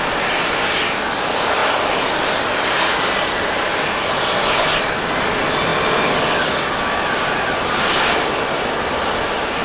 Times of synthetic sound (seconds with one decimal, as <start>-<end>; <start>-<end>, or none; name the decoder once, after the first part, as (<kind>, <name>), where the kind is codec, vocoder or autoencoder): none